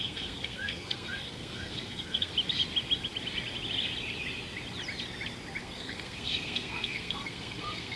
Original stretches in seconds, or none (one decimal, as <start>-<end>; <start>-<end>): 2.3-5.6